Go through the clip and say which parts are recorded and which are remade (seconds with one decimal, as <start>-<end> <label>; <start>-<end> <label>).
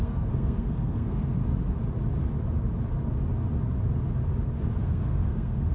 0.0-1.4 remade; 1.4-4.8 recorded; 4.8-5.7 remade